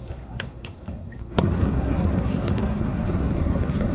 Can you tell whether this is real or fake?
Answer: fake